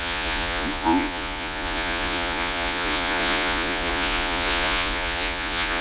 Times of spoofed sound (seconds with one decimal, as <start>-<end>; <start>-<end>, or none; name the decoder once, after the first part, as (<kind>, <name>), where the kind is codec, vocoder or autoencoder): 0.0-5.8 (vocoder, Vocos)